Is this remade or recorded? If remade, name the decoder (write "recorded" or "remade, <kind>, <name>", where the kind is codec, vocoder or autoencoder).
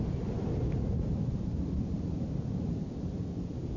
recorded